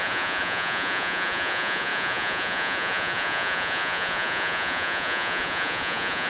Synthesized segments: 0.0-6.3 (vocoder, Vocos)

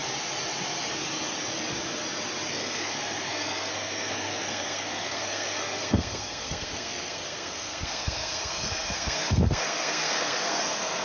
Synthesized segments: 2.5-11.0 (codec, SNAC)

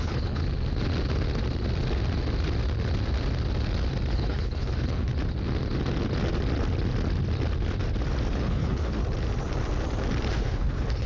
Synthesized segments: 0.0-0.4 (codec, HILCodec); 4.1-5.1; 8.3-9.0; 10.3-11.1

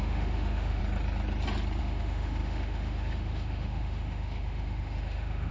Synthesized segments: 0.0-0.8 (autoencoder, DAC-VAE); 1.8-5.5